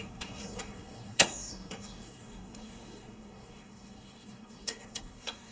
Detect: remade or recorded remade